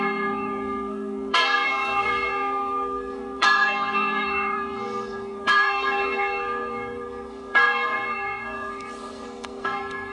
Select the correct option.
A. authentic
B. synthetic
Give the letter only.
B